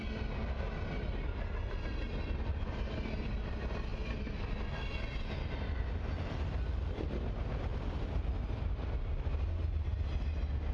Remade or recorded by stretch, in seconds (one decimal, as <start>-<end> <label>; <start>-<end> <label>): 0.0-3.9 recorded; 3.9-5.7 remade; 5.7-7.7 recorded; 7.7-8.3 remade; 8.3-10.7 recorded